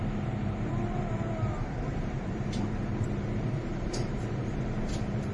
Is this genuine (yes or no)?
no